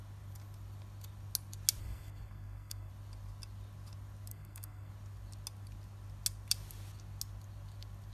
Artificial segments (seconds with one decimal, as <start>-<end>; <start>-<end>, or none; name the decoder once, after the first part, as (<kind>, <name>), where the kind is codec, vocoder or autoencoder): 1.8-2.9 (codec, SNAC); 4.3-4.9